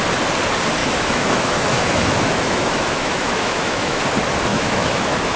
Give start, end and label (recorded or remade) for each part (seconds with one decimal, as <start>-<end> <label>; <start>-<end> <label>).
0.0-0.8 recorded; 0.8-4.0 remade; 4.0-4.5 recorded; 4.5-5.4 remade